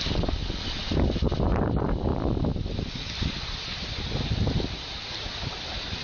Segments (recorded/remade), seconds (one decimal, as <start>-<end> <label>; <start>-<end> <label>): 0.0-2.1 recorded; 2.1-2.7 remade; 2.7-6.0 recorded